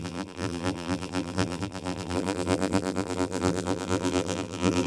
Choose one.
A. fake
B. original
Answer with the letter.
A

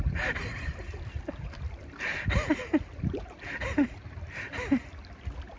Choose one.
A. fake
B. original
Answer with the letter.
B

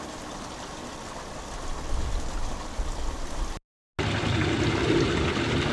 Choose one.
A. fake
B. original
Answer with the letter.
B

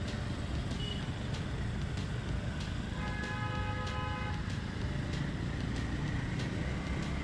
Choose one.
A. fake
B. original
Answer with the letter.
B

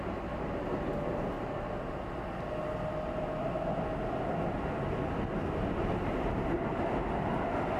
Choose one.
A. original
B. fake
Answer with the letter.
A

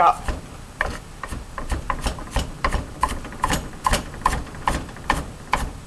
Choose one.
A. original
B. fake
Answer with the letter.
B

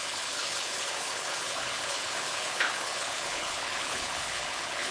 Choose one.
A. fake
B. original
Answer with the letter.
A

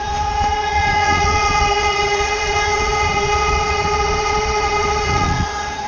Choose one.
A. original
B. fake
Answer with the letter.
B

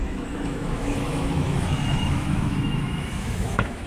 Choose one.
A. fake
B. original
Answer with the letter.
A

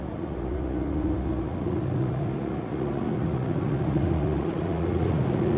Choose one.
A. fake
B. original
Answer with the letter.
A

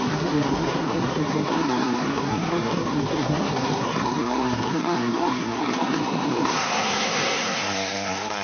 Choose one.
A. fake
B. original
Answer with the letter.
A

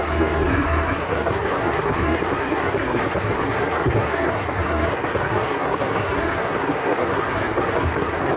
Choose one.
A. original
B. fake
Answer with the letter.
B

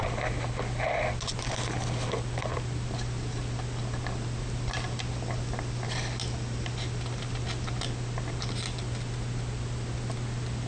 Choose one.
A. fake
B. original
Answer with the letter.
B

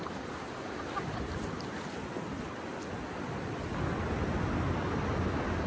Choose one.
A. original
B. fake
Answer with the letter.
A